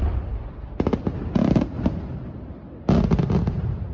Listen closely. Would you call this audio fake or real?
real